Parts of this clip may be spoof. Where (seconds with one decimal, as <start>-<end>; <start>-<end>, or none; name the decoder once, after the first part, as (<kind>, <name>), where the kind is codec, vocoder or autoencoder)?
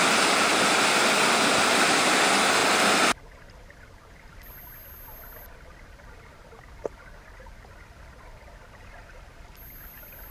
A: none